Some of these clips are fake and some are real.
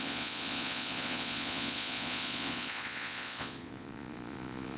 fake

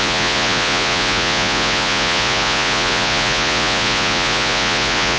fake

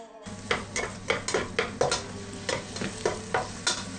real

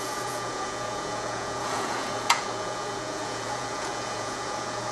fake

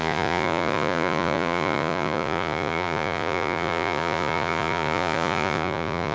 fake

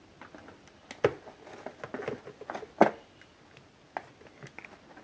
real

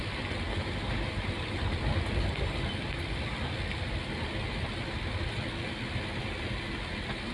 real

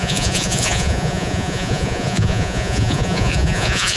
fake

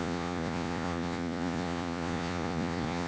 fake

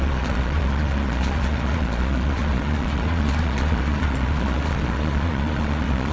fake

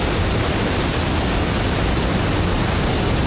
real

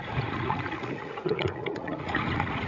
fake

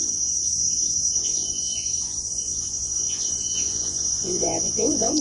fake